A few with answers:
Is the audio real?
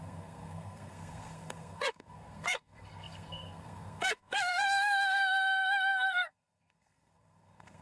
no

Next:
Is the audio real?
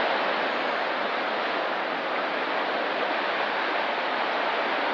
yes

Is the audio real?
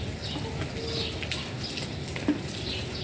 yes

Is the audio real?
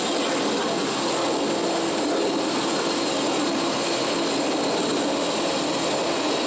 yes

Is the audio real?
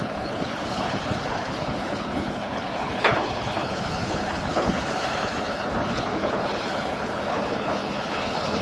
no